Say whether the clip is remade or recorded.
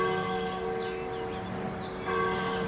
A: recorded